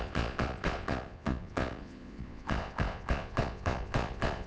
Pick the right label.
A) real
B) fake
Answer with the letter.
B